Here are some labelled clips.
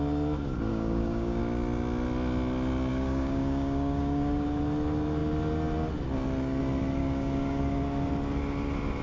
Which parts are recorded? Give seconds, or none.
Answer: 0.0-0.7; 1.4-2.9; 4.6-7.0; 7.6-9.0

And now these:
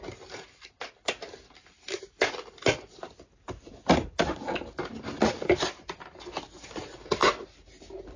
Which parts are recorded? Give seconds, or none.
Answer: 0.0-8.2

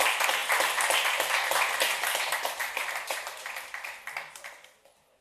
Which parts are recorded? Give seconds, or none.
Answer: 0.0-2.6; 3.4-5.2

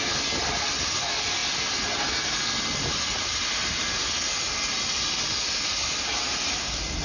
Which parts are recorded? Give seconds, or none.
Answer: 0.0-7.0

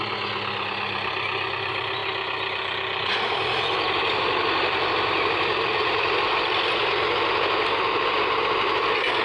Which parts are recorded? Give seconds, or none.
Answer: 0.0-2.0; 6.3-9.2